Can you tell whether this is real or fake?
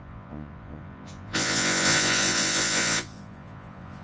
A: fake